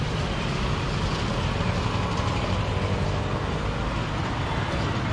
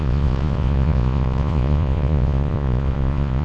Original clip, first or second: first